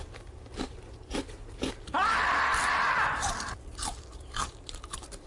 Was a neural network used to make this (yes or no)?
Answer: yes